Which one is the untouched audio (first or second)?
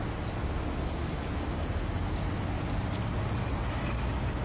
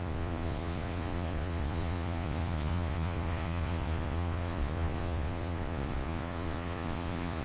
first